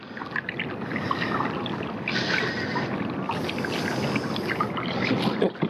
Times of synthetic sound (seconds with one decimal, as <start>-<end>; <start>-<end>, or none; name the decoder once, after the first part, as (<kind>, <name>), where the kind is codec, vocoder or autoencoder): 2.7-3.5 (vocoder, BigVGAN v2)